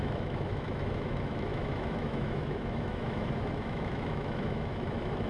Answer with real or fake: fake